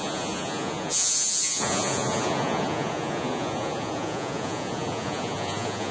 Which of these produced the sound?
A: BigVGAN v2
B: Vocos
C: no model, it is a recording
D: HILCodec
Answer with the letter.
B